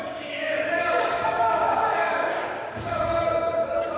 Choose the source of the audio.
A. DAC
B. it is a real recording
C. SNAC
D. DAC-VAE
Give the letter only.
A